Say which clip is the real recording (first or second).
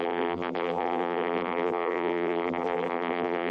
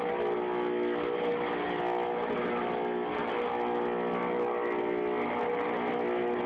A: second